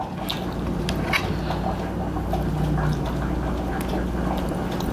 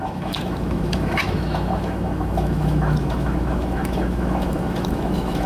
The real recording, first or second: first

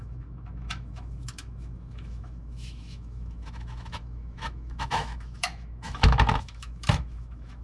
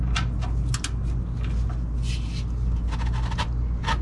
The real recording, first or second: second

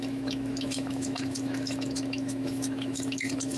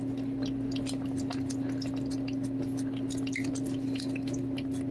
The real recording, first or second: second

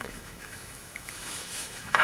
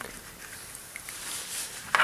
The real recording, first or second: second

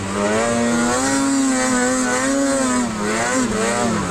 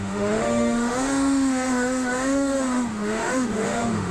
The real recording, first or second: first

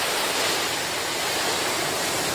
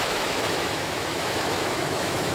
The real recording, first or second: first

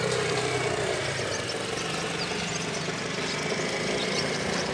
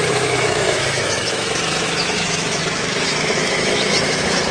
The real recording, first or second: first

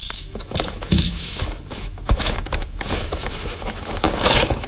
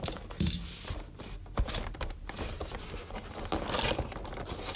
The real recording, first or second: second